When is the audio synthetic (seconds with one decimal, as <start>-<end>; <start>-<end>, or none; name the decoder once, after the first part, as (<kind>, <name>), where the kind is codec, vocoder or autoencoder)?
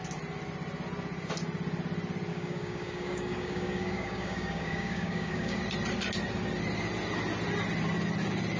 2.3-5.6 (codec, DAC)